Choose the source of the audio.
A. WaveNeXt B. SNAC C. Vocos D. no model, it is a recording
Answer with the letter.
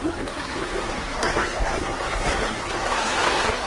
B